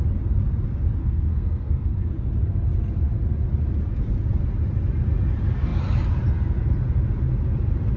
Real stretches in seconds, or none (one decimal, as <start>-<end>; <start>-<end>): 0.0-1.0; 2.1-8.0